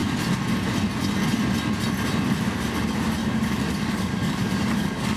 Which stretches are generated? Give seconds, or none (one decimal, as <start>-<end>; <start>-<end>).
3.2-5.2